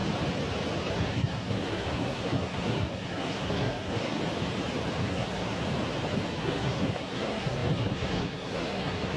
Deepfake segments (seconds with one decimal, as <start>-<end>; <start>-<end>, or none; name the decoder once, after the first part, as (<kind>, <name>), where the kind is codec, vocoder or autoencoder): 0.9-4.2 (codec, SNAC); 5.0-5.6; 6.4-9.2